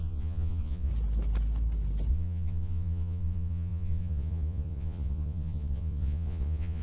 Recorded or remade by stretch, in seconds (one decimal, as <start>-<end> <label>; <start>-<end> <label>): 0.0-0.9 remade; 0.9-2.1 recorded; 2.1-6.8 remade